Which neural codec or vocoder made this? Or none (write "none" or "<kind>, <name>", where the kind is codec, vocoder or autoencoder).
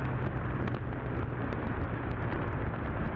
none